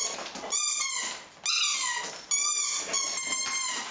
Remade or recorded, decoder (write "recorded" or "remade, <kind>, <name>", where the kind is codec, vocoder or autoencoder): recorded